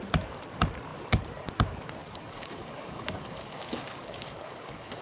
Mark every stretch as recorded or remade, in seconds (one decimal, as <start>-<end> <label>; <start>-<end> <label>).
0.0-2.0 recorded; 2.0-5.0 remade